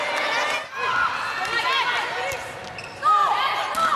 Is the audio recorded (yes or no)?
yes